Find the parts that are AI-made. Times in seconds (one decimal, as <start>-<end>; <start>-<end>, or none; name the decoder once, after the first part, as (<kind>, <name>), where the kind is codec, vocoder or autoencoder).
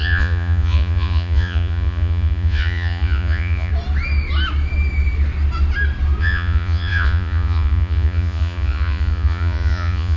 0.0-3.7 (vocoder, Vocos); 6.2-10.2